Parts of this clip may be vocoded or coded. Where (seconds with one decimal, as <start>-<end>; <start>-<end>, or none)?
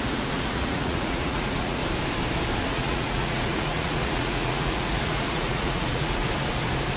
0.0-1.8; 2.7-6.2